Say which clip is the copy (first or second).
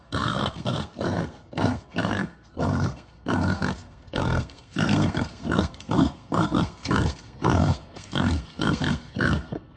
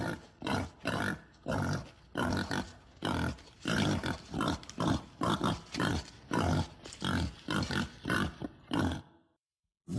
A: first